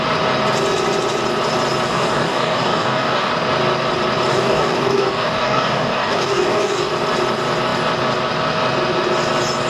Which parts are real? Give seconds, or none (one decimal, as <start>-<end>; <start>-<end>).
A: 0.0-1.9; 3.3-4.3; 6.9-9.7